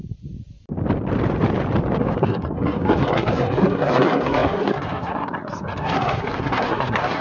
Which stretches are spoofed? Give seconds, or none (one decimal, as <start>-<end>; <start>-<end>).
2.0-7.2